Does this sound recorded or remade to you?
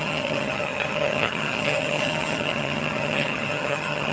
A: remade